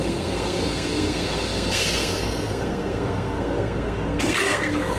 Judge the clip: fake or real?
fake